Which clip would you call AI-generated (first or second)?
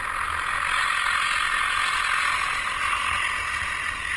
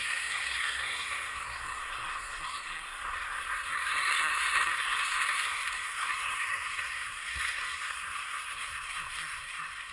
second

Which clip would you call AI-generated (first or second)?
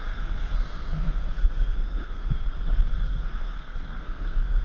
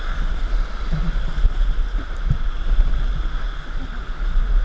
first